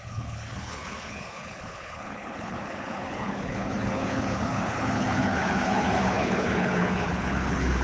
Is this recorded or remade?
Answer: remade